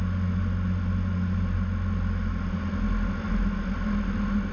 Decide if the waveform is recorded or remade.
recorded